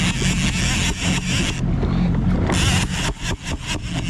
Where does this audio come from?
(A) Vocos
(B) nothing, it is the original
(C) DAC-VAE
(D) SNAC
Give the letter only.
B